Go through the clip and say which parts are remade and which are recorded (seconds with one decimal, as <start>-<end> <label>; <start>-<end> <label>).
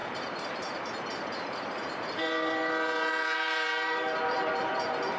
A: 0.0-5.2 remade